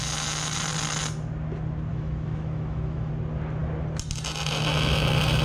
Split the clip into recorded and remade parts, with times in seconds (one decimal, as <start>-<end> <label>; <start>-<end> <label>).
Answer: 0.0-1.9 recorded; 1.9-3.1 remade; 3.1-5.4 recorded